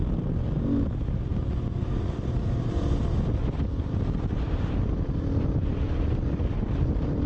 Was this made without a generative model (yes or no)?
yes